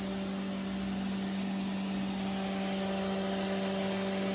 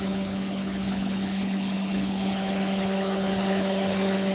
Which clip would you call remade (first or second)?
second